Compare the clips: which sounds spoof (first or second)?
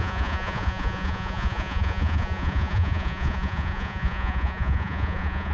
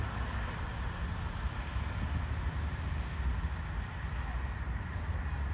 first